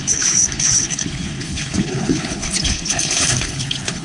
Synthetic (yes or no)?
yes